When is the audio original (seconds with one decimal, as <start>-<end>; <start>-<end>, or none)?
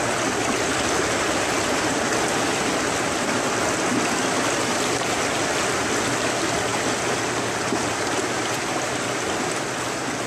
0.0-10.3